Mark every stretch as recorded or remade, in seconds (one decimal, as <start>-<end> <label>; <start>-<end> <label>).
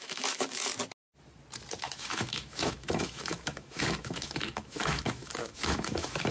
0.0-0.7 remade; 0.7-1.8 recorded; 1.8-6.3 remade